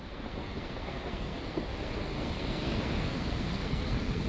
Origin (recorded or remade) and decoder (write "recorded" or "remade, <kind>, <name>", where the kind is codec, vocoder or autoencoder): remade, codec, SNAC